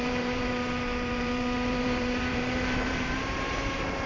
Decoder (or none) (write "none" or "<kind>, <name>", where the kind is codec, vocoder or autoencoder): vocoder, BigVGAN v2